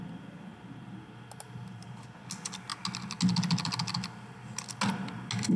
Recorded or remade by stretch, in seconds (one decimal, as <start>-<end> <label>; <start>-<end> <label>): 0.0-5.6 recorded